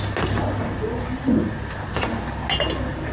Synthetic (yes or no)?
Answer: no